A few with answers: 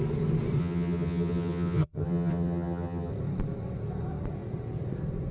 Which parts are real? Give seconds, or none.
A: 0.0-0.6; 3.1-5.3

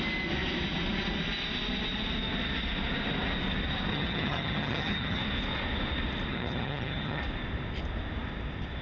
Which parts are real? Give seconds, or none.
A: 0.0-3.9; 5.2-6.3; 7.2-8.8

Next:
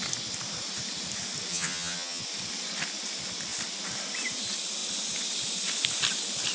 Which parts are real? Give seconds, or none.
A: 0.0-1.5; 2.2-6.5

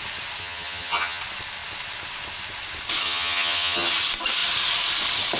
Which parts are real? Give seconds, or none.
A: 0.0-0.4; 1.2-3.0; 3.9-5.4